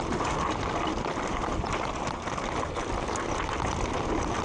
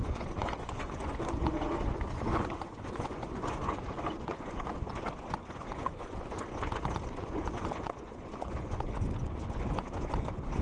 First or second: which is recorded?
first